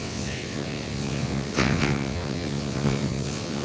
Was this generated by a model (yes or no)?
yes